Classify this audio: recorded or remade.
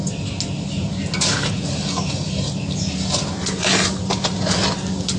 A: recorded